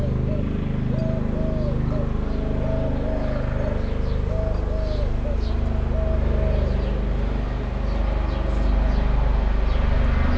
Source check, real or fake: real